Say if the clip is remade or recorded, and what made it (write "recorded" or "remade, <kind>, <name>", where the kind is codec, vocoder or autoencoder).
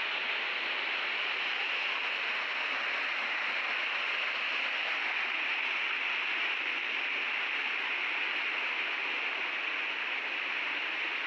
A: recorded